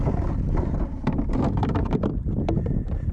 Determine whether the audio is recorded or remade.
recorded